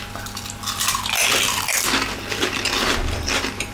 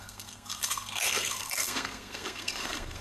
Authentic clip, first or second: first